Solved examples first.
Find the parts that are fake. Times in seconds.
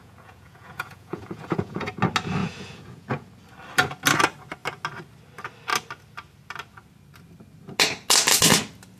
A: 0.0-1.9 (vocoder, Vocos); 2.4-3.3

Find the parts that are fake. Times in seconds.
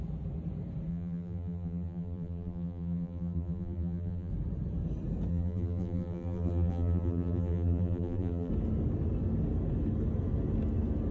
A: 0.9-4.3 (vocoder, BigVGAN v2); 5.3-8.5